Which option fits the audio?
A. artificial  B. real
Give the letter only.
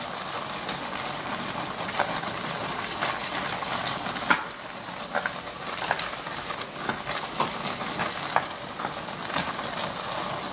B